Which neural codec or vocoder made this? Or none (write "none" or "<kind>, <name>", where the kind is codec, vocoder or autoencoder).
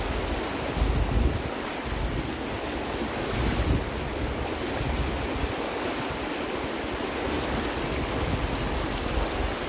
none